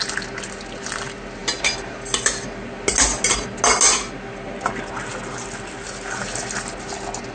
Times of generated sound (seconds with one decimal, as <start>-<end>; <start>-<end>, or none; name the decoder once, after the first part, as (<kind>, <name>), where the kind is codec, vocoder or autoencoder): none